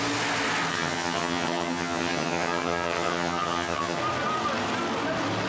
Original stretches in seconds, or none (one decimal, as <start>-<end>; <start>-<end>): 0.0-0.7; 4.0-5.5